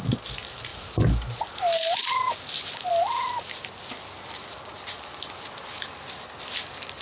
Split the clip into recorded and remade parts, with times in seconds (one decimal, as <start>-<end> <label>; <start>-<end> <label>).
0.0-7.0 recorded